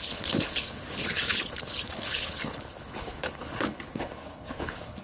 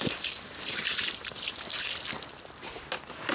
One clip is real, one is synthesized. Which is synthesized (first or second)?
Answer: first